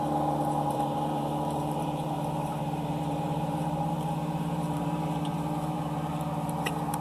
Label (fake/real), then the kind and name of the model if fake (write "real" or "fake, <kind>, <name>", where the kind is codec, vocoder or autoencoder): fake, vocoder, BigVGAN v2